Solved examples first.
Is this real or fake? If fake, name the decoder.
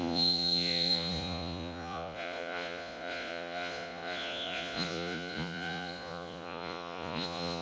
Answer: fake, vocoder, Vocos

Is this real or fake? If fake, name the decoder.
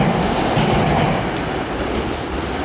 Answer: real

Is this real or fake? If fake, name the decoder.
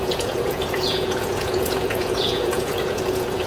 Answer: fake, vocoder, Vocos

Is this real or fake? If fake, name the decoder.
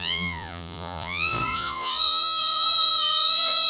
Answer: fake, vocoder, Vocos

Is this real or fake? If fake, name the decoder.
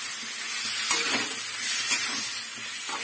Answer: real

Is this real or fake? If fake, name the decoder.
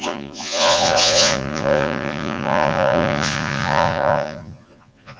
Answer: fake, vocoder, Vocos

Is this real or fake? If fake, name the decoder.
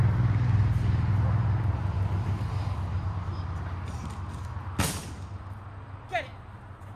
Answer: real